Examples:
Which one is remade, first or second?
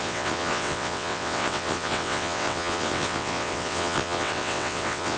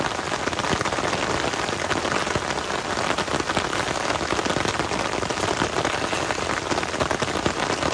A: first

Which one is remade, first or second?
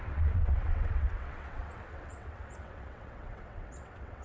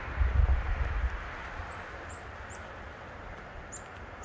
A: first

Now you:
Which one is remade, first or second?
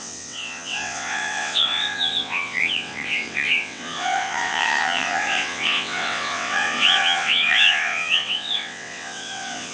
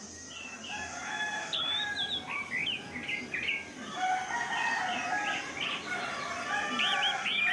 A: first